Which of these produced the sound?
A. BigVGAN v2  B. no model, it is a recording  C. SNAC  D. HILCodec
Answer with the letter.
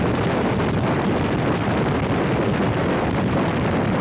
B